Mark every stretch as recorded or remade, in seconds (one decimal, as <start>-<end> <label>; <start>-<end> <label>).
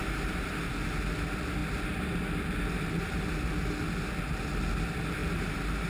0.0-0.5 remade; 0.5-5.2 recorded; 5.2-5.9 remade